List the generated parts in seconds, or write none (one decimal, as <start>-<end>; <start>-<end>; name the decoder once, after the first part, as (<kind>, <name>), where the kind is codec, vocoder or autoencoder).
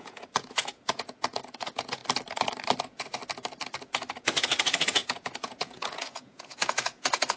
0.0-2.0 (vocoder, Vocos); 2.8-3.2; 3.8-7.4